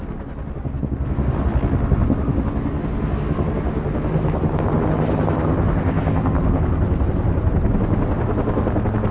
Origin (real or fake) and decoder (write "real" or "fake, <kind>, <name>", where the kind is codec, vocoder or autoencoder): real